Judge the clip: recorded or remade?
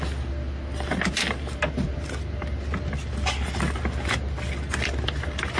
recorded